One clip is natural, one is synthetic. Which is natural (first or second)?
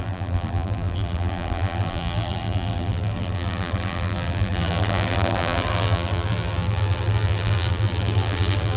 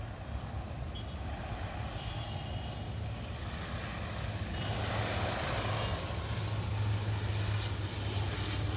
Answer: second